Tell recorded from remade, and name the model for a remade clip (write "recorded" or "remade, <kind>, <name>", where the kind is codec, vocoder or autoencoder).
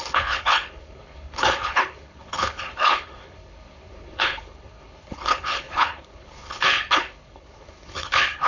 remade, codec, HILCodec